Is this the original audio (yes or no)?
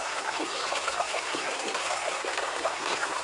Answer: no